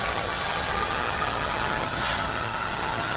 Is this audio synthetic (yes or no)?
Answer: yes